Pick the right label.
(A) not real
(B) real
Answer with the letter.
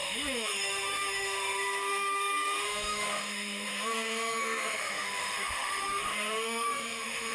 A